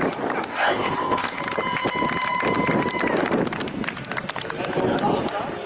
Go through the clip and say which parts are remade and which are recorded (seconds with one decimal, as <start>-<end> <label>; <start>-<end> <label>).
0.0-0.5 recorded; 0.5-1.4 remade; 1.4-5.7 recorded